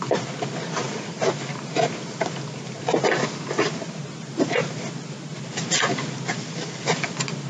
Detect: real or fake real